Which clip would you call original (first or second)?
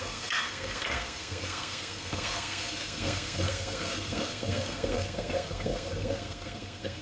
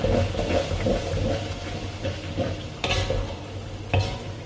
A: second